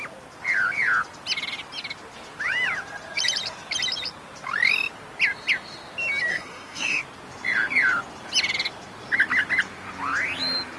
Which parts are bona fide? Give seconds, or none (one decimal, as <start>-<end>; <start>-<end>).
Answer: 0.0-6.3; 7.0-10.8